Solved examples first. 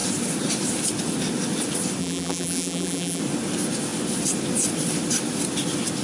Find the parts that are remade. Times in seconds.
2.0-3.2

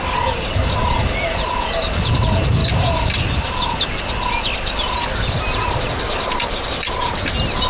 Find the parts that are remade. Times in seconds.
none

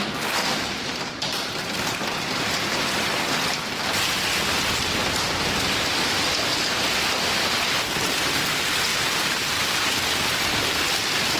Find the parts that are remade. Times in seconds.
0.4-1.5; 8.9-9.8

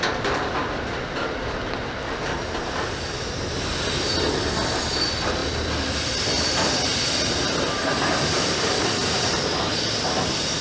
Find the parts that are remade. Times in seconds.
5.4-9.7